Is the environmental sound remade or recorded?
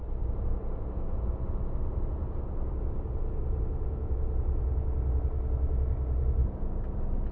recorded